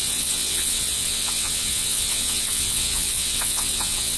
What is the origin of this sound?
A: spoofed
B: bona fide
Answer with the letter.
A